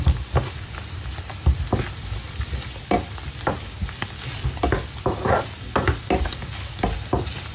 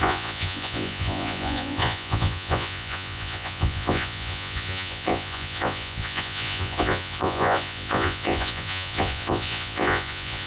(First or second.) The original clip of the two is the first